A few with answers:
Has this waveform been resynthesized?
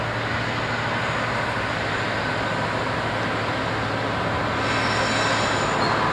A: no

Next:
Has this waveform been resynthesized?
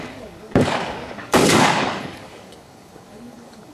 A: yes